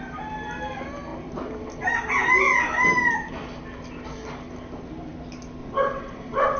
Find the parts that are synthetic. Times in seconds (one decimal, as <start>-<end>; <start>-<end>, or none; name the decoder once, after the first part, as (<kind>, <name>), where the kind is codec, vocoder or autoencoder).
5.6-6.6 (vocoder, WaveNeXt)